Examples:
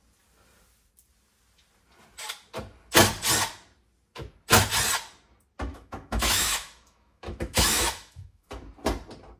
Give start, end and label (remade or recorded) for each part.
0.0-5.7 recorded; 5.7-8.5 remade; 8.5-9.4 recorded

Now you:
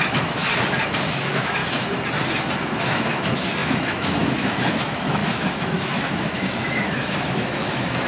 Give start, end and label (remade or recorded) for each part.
0.0-0.4 remade; 0.4-1.1 recorded; 1.1-1.6 remade; 1.6-2.8 recorded; 2.8-8.1 remade

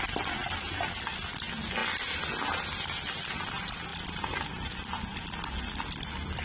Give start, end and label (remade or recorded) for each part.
0.0-6.4 recorded

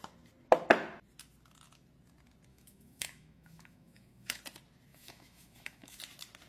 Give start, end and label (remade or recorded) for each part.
0.0-2.5 recorded; 2.5-4.4 remade; 4.4-4.9 recorded; 4.9-6.0 remade; 6.0-6.5 recorded

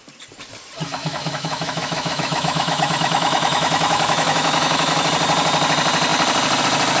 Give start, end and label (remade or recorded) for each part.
0.0-0.9 recorded; 0.9-5.1 remade; 5.1-7.0 recorded